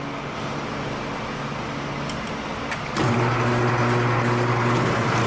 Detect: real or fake real